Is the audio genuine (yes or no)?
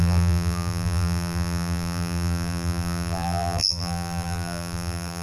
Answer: no